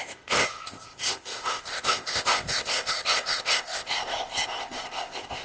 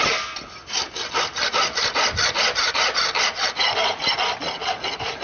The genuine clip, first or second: second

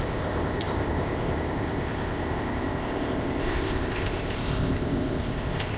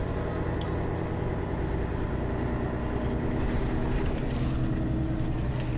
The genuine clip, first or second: second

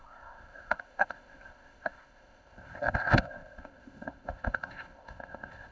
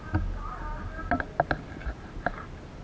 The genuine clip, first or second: second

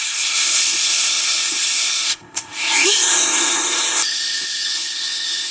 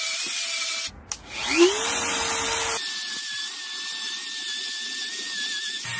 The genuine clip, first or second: second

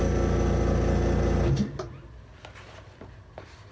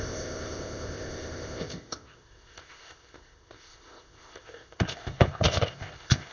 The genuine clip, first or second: first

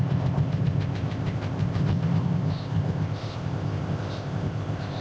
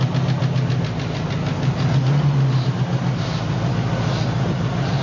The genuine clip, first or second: second